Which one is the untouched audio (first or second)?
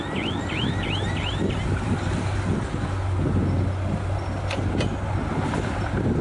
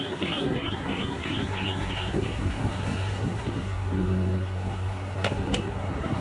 first